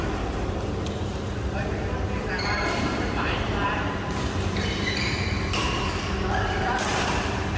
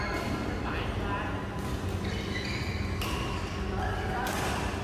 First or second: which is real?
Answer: second